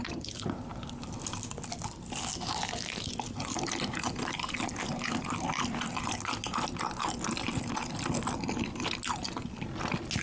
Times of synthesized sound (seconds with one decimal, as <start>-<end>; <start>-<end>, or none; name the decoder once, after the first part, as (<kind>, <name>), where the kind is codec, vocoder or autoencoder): none